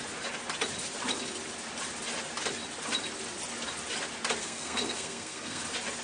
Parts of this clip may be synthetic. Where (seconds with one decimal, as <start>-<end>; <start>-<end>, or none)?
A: 4.4-5.6